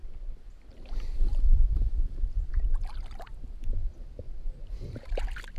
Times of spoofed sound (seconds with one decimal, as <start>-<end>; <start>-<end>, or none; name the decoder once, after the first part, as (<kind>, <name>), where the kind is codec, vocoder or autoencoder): 0.0-2.5 (vocoder, BigVGAN v2); 3.3-5.1